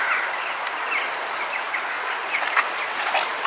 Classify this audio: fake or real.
real